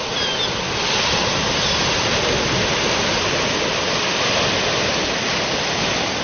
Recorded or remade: recorded